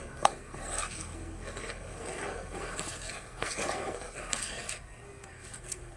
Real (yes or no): no